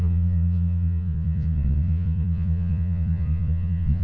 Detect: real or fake fake